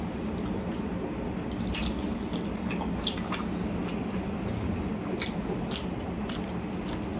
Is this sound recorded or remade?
recorded